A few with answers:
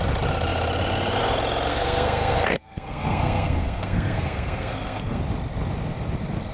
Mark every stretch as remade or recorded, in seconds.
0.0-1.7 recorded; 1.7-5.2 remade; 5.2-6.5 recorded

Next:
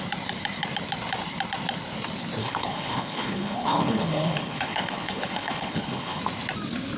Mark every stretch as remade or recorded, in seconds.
0.0-2.4 recorded; 2.4-6.2 remade; 6.2-7.0 recorded

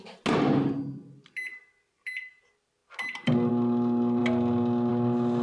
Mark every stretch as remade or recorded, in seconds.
0.0-5.4 recorded

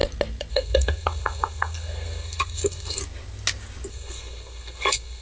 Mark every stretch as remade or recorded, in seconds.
0.0-0.5 recorded; 0.5-3.0 remade; 3.0-3.9 recorded; 3.9-5.2 remade

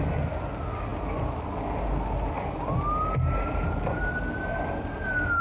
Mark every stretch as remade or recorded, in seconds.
0.0-5.4 recorded

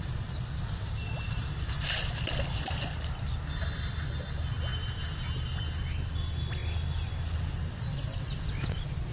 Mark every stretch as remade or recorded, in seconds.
0.0-9.1 recorded